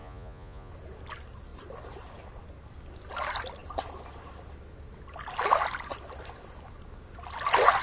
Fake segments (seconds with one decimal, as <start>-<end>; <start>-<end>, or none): 0.0-0.7